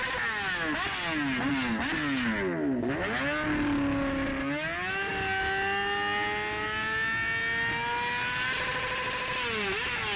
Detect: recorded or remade recorded